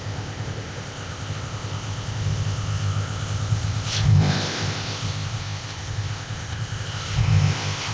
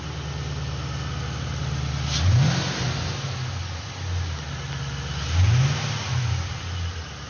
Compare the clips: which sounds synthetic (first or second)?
first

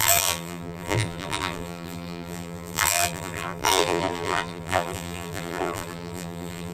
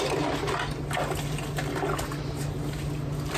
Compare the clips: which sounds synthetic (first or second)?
first